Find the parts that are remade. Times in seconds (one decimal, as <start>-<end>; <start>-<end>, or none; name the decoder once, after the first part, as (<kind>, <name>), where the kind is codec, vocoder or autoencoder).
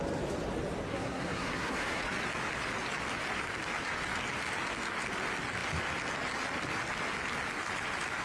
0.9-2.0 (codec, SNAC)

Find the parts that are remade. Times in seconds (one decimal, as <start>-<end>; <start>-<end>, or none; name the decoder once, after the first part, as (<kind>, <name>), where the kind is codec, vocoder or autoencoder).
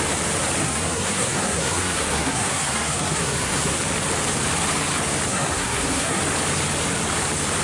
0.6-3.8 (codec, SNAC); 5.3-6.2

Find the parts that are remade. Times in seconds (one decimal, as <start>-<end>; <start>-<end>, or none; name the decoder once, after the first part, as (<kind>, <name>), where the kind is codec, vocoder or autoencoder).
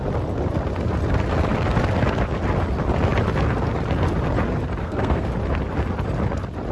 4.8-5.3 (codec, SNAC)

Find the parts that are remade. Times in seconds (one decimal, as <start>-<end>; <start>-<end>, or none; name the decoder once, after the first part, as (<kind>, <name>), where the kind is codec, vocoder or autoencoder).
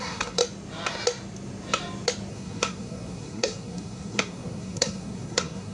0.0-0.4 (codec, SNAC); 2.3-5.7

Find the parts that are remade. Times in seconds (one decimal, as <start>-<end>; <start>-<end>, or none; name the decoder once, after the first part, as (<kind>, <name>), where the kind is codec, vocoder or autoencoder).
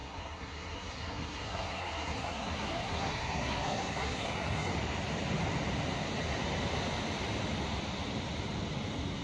0.0-4.7 (codec, SNAC)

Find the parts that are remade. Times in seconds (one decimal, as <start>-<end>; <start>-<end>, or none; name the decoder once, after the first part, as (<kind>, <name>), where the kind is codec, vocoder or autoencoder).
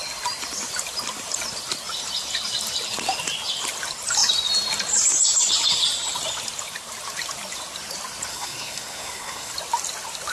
8.3-9.5 (codec, SNAC)